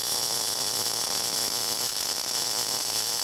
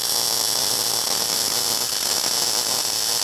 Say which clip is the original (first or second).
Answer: second